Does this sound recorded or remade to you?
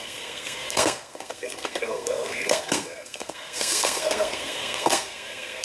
remade